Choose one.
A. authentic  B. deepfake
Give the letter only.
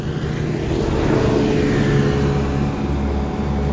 A